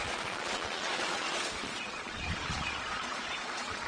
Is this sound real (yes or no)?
no